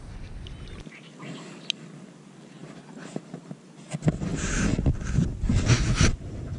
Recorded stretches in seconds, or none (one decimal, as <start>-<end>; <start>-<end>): 0.0-6.6